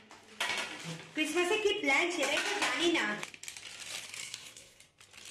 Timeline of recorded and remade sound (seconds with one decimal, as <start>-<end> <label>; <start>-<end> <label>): 0.0-4.2 recorded; 4.2-4.8 remade; 4.8-5.3 recorded